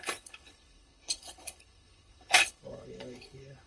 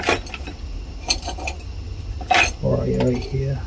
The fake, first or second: first